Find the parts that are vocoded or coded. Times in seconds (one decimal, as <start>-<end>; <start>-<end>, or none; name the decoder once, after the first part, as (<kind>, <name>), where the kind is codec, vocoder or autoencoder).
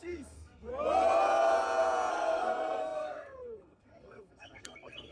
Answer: 0.0-0.7 (codec, SNAC); 2.1-5.1